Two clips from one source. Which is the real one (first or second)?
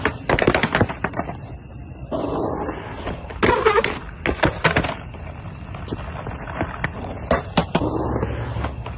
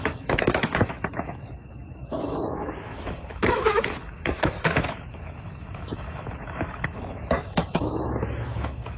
first